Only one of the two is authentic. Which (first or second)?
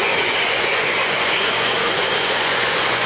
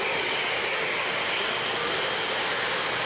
second